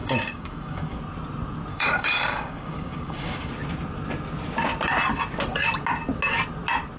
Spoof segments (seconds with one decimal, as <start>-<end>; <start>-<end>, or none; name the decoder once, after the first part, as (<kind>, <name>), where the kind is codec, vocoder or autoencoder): 0.0-1.0 (codec, DAC); 1.7-3.5